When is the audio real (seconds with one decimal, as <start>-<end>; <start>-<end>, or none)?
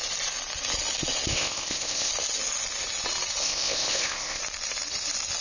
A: 0.0-1.3; 2.1-3.4; 4.4-5.4